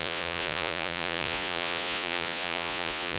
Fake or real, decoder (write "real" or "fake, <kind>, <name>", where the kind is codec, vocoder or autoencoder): fake, vocoder, Vocos